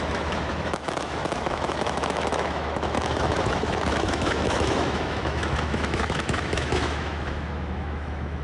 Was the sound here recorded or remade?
remade